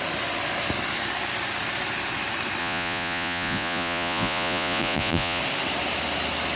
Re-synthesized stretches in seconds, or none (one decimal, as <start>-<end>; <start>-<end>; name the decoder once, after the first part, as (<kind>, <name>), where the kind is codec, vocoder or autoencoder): 2.6-5.4 (vocoder, Vocos)